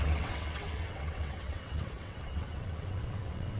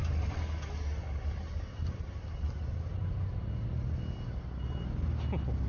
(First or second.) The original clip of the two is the second